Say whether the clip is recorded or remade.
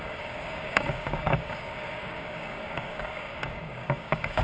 remade